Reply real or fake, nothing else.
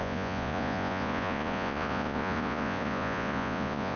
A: fake